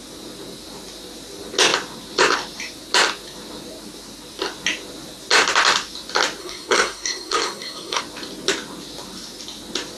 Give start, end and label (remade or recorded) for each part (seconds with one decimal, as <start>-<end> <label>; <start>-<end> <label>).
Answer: 0.0-6.4 recorded; 6.4-8.0 remade; 8.0-10.0 recorded